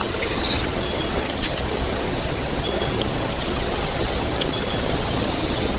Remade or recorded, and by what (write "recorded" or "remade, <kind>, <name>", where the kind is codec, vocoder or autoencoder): remade, vocoder, HiFi-GAN